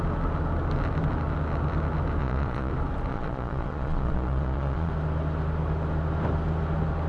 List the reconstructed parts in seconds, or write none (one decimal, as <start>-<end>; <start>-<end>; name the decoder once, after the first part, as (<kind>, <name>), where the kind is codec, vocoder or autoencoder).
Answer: 2.2-2.7 (vocoder, Vocos); 3.1-4.9